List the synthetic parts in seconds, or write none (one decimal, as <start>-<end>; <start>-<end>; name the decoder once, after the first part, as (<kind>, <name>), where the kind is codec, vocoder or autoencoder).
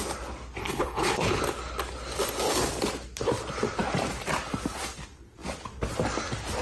0.6-1.4 (codec, HILCodec)